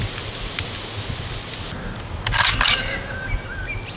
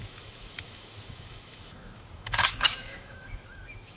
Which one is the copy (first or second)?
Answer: second